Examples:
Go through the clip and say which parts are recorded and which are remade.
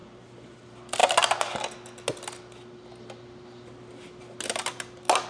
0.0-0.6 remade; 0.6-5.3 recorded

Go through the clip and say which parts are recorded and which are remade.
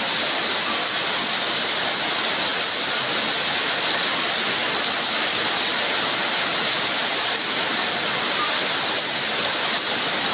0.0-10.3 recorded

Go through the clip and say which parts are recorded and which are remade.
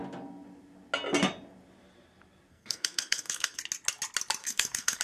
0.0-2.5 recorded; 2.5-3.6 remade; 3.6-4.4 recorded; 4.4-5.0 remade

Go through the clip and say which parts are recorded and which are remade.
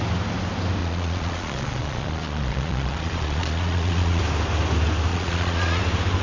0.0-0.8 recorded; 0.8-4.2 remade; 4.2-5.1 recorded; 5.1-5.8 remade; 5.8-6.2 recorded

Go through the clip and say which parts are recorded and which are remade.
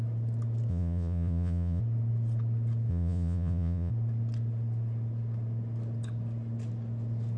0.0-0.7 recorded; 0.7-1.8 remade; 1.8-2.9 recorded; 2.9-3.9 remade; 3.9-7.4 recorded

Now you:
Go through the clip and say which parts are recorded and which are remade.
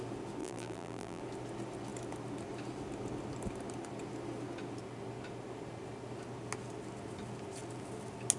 0.0-0.4 recorded; 0.4-1.2 remade; 1.2-8.4 recorded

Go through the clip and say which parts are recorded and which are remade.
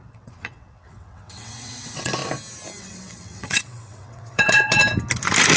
0.0-2.2 remade; 2.2-2.8 recorded; 2.8-4.8 remade; 4.8-5.6 recorded